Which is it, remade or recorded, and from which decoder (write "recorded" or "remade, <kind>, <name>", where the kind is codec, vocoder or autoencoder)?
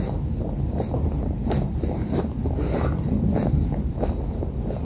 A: recorded